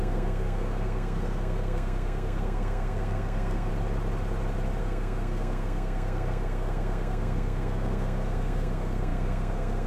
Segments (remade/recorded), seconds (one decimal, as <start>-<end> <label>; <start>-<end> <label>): 0.0-3.7 remade; 3.7-4.8 recorded; 4.8-9.9 remade

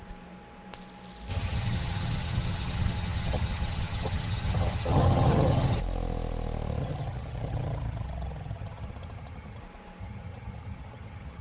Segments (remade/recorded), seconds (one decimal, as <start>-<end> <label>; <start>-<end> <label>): 0.0-1.3 recorded; 1.3-5.8 remade; 5.8-6.8 recorded; 6.8-9.6 remade; 9.6-10.0 recorded; 10.0-11.4 remade

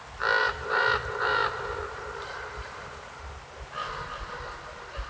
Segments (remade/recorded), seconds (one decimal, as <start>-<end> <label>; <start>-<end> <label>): 0.0-0.4 recorded; 0.4-3.3 remade; 3.3-5.1 recorded

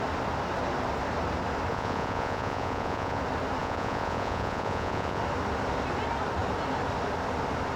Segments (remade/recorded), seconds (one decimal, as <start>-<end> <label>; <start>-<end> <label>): 0.0-1.7 recorded; 1.7-3.2 remade; 3.2-3.6 recorded; 3.6-5.2 remade; 5.2-7.8 recorded

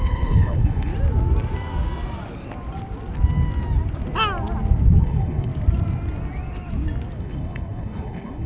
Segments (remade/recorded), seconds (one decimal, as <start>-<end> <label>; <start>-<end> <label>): 0.0-0.9 remade; 0.9-5.0 recorded; 5.0-5.5 remade; 5.5-7.2 recorded; 7.2-8.5 remade